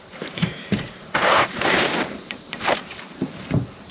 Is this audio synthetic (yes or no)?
yes